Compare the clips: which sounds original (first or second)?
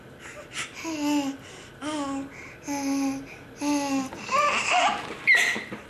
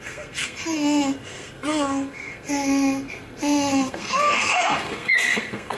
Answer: first